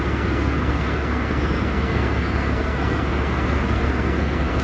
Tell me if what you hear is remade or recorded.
remade